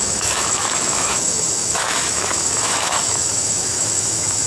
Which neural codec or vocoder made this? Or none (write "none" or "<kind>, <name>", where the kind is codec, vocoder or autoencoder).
autoencoder, DAC-VAE